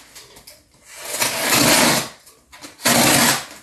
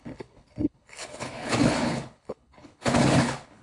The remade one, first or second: second